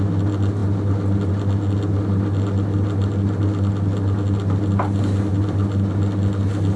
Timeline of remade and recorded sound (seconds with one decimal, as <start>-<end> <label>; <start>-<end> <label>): 0.0-5.3 recorded; 5.3-5.9 remade; 5.9-6.8 recorded